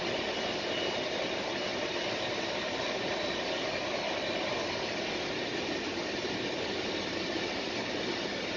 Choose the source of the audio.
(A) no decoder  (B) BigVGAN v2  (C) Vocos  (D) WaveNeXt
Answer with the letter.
A